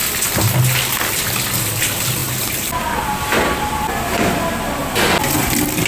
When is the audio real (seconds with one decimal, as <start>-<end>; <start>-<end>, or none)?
0.0-5.9